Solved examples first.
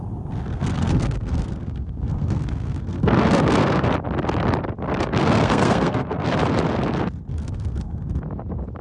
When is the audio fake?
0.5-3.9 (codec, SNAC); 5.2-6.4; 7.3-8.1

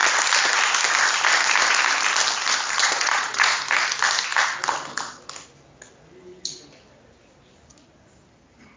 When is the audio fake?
2.8-3.6 (vocoder, Vocos)

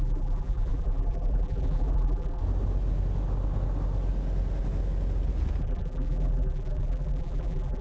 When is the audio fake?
0.0-2.4 (vocoder, BigVGAN v2); 5.6-7.8

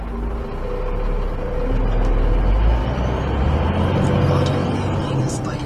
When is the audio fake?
2.8-3.4 (vocoder, BigVGAN v2)

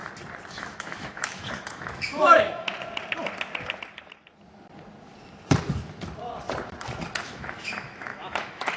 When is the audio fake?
0.5-2.7 (autoencoder, DAC-VAE); 7.2-8.8

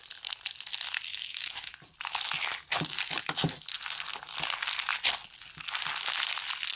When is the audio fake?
1.1-1.7 (autoencoder, DAC-VAE)

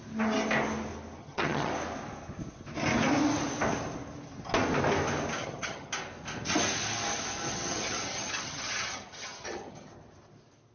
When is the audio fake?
1.2-1.7 (vocoder, HiFi-GAN); 5.4-5.9; 7.5-9.9

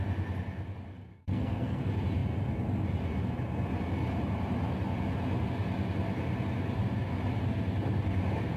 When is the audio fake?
1.1-1.8 (codec, SNAC)